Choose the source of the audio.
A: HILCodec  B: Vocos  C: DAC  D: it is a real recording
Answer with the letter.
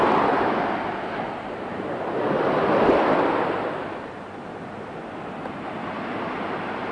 D